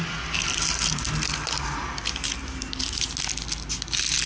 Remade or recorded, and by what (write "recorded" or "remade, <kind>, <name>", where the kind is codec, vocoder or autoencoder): recorded